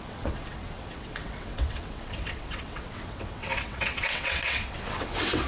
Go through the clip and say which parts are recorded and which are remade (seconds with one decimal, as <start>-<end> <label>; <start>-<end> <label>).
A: 0.0-5.5 remade